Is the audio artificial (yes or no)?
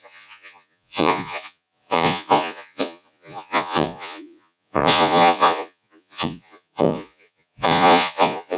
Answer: yes